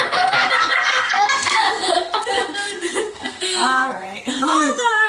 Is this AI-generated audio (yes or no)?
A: yes